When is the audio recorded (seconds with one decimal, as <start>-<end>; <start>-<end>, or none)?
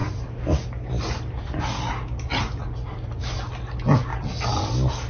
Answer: 0.0-5.1